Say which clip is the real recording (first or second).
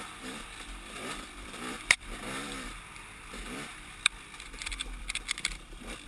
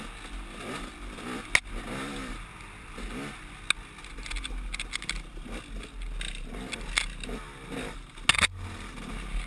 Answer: second